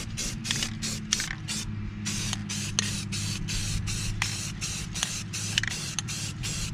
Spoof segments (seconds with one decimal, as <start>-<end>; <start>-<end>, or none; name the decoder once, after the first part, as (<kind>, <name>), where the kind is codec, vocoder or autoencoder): 3.6-6.7 (vocoder, BigVGAN v2)